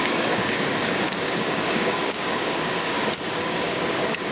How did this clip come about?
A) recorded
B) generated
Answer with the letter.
B